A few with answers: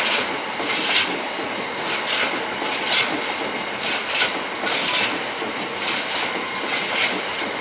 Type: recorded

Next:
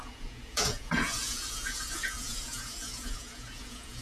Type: remade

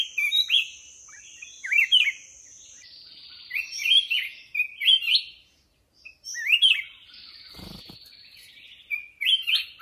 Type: recorded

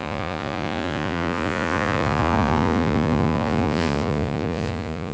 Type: remade